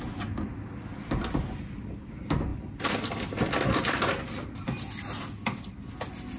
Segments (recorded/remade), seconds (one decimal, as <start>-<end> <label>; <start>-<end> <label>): 0.0-6.4 recorded